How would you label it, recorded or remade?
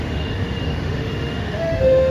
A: remade